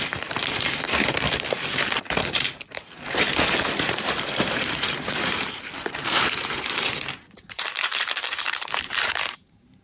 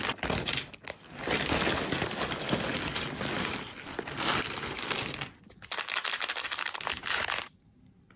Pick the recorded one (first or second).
second